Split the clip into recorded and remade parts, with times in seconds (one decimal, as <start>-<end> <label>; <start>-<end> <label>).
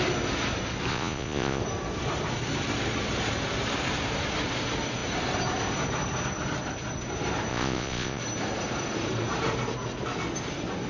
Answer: 0.0-0.9 recorded; 0.9-1.6 remade; 1.6-7.5 recorded; 7.5-8.2 remade; 8.2-10.9 recorded